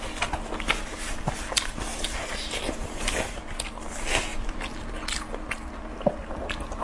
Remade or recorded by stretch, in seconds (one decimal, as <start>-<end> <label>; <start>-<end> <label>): 0.0-6.8 recorded